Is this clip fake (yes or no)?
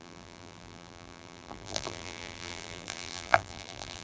yes